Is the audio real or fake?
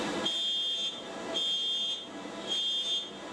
real